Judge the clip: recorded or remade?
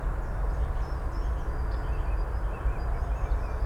recorded